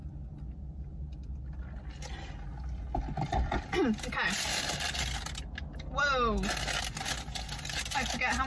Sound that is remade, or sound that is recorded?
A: recorded